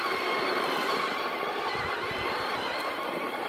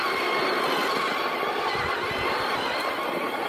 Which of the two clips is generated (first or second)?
first